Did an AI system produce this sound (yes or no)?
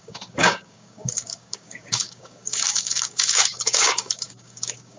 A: yes